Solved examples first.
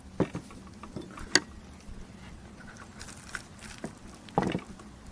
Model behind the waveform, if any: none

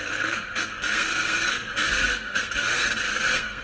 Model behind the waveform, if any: codec, SNAC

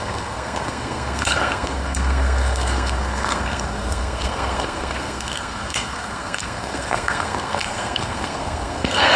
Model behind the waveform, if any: codec, SNAC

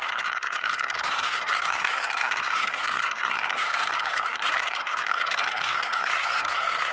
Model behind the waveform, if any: codec, SNAC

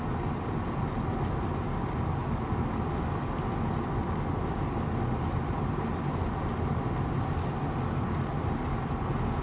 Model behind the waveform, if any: none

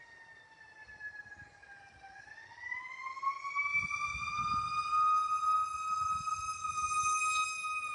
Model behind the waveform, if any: none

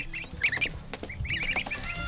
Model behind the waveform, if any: none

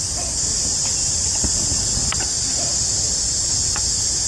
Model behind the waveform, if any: none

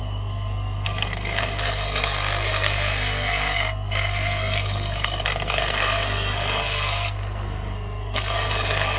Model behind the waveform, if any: codec, SNAC